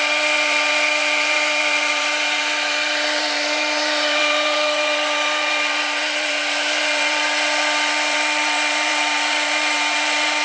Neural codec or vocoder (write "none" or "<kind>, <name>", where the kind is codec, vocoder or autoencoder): vocoder, BigVGAN v2